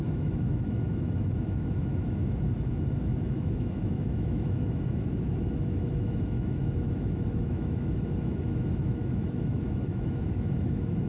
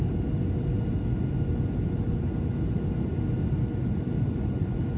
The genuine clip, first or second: second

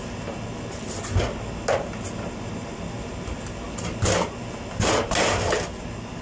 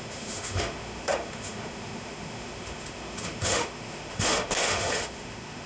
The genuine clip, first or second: first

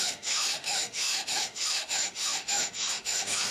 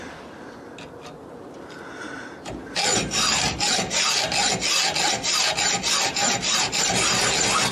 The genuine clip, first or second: second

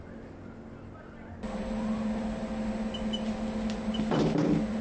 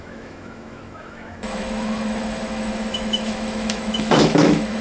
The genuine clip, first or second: first